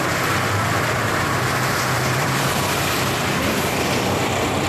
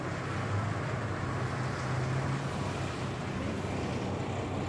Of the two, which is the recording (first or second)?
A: second